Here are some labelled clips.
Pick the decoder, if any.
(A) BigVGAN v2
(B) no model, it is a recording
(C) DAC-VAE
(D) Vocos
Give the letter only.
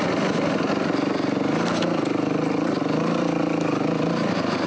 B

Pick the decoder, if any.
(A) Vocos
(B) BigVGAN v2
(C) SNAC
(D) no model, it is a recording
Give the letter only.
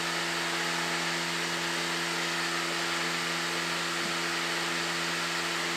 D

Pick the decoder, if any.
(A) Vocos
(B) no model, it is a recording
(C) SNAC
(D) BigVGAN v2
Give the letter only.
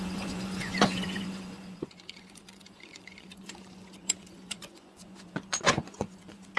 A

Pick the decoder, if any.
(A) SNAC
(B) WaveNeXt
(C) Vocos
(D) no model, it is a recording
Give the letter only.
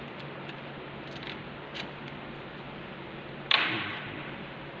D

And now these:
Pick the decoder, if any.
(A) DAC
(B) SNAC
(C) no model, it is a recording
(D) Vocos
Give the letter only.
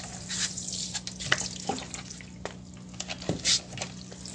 C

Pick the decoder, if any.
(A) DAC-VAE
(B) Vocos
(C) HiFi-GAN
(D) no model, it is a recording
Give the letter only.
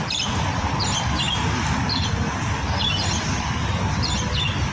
D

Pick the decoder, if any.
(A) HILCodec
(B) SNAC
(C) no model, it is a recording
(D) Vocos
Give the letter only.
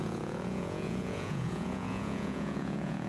D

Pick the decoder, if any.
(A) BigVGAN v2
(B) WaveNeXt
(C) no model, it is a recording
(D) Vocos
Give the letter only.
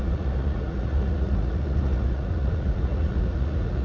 D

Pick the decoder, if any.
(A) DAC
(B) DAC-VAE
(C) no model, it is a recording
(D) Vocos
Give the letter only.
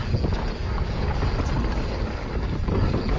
C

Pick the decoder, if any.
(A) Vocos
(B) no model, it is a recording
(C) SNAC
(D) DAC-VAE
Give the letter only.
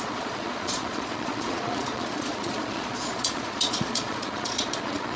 A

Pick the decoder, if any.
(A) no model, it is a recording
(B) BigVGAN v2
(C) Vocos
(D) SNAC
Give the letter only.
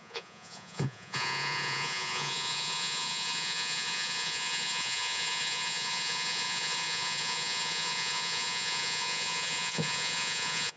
C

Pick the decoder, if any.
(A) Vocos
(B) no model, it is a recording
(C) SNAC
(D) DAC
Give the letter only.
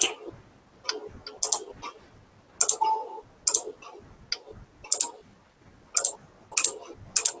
B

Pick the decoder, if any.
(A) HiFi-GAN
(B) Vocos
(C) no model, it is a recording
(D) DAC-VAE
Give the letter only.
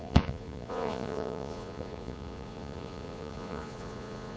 B